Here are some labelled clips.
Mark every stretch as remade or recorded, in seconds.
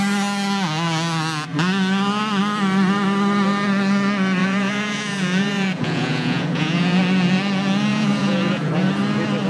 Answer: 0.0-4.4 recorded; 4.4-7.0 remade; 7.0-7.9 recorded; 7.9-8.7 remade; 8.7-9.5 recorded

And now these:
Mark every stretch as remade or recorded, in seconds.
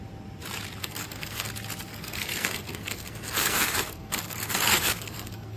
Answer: 0.0-0.8 recorded; 0.8-1.5 remade; 1.5-1.9 recorded; 1.9-5.6 remade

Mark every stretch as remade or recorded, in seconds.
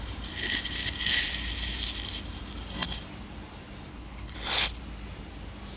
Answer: 0.0-3.9 recorded; 3.9-4.8 remade; 4.8-5.8 recorded